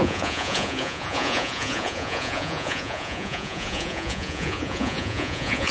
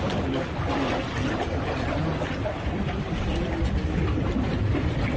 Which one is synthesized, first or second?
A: first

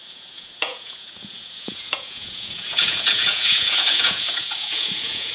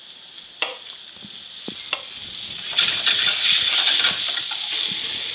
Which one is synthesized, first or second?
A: first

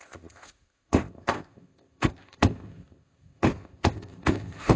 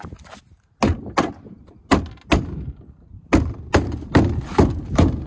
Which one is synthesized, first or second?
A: first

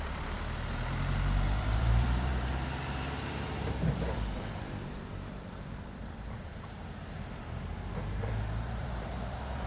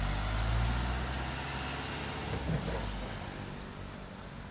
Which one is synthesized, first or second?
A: first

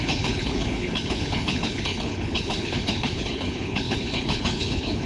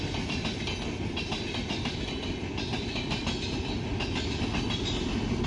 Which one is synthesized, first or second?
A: first